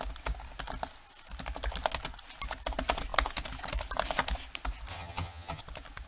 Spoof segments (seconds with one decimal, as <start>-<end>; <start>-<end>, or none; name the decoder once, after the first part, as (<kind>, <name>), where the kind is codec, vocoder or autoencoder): 4.9-5.6 (vocoder, HiFi-GAN)